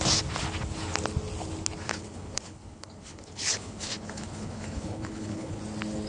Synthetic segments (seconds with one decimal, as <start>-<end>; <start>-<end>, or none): 1.9-5.6